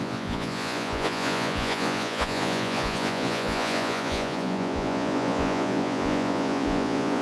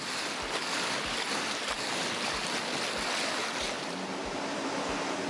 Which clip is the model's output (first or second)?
first